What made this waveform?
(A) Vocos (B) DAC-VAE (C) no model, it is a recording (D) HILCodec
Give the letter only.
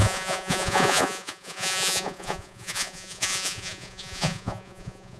A